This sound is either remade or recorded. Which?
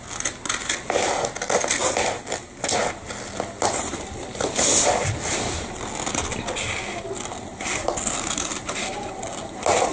recorded